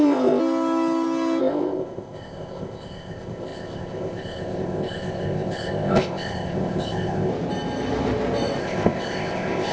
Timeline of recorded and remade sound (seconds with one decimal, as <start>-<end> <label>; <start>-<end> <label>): 0.0-0.4 remade; 0.4-1.4 recorded; 1.4-7.3 remade; 7.3-8.6 recorded; 8.6-9.7 remade